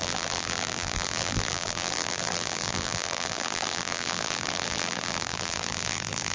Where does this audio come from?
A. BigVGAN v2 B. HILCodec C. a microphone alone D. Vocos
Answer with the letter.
A